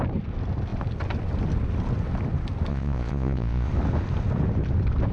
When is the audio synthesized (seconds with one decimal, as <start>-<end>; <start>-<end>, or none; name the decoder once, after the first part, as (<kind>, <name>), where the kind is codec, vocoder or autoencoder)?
2.7-3.7 (vocoder, Vocos)